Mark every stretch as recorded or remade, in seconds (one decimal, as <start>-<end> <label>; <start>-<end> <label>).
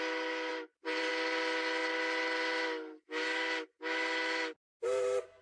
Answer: 0.0-0.5 recorded; 0.5-1.1 remade; 1.1-5.4 recorded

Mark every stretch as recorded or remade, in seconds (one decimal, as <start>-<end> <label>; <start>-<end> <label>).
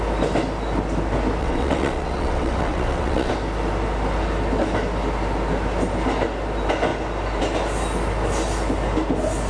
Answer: 0.0-1.4 recorded; 1.4-3.3 remade; 3.3-9.5 recorded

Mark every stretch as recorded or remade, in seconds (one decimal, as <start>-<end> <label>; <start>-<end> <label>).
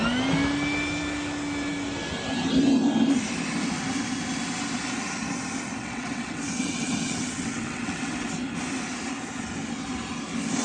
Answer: 0.0-5.8 recorded; 5.8-8.3 remade; 8.3-10.6 recorded